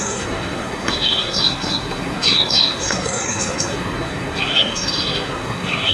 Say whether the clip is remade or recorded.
remade